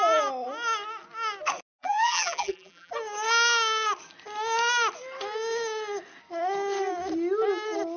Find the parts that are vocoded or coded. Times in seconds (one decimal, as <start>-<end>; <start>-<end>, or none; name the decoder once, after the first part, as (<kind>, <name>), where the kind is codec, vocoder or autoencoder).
1.8-2.9 (vocoder, BigVGAN v2)